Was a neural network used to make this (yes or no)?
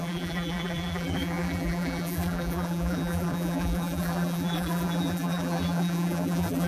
yes